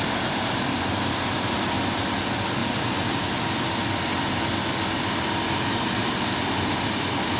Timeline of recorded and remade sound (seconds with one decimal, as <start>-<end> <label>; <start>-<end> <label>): 0.0-7.4 recorded